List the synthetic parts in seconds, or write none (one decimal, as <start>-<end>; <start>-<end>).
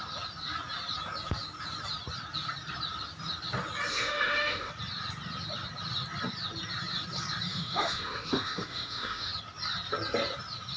3.9-4.7; 7.5-9.3